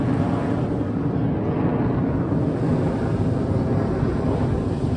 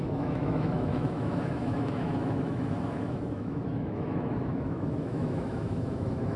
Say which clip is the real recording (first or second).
first